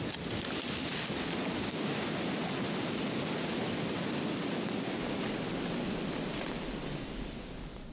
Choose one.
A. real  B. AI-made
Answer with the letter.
A